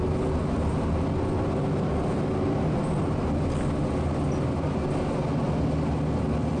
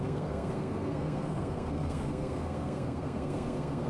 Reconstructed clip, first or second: second